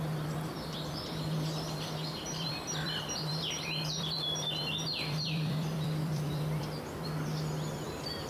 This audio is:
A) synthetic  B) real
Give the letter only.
A